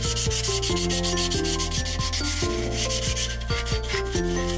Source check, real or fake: real